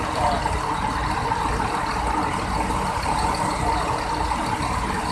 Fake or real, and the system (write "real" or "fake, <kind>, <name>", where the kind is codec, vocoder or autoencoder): real